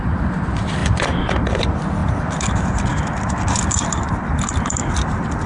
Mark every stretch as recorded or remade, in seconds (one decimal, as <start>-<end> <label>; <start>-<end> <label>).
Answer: 0.0-5.5 remade